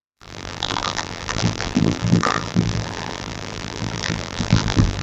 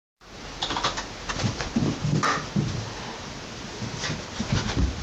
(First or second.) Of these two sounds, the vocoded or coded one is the first